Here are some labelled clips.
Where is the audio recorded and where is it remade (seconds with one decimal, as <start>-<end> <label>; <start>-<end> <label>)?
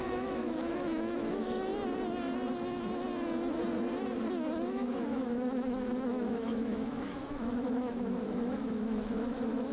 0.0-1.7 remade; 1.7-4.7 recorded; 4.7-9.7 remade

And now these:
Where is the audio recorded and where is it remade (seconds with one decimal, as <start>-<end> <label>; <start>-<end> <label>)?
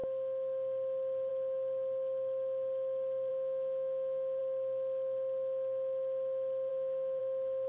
0.0-3.3 recorded; 3.3-4.4 remade; 4.4-6.7 recorded; 6.7-7.2 remade; 7.2-7.7 recorded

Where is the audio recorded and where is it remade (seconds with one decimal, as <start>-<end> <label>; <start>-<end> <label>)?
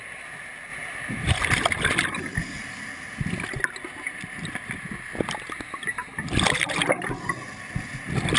0.0-8.4 recorded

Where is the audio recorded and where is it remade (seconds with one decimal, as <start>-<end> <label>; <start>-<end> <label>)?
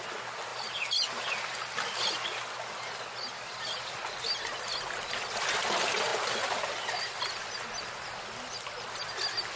0.0-9.6 recorded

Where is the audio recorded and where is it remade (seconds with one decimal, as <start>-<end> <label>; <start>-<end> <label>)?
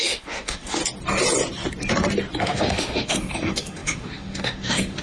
0.0-0.8 remade; 0.8-2.4 recorded; 2.4-5.0 remade